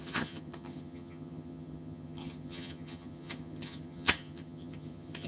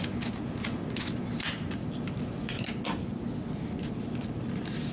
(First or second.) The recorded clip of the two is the second